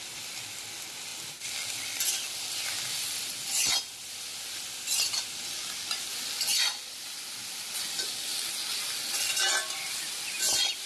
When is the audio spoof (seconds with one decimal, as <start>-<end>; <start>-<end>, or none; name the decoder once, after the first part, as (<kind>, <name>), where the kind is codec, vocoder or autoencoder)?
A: none